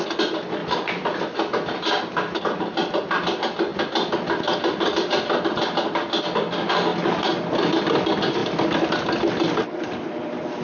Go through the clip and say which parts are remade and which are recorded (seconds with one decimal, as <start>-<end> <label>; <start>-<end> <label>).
0.0-8.4 recorded; 8.4-9.1 remade; 9.1-10.6 recorded